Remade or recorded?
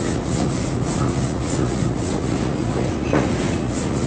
remade